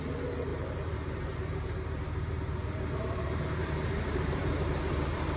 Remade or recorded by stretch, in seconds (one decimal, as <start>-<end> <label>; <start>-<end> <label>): 0.0-5.4 remade